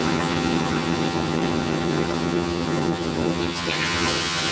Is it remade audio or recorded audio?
remade